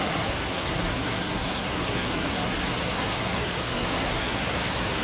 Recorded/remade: remade